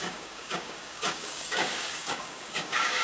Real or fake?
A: fake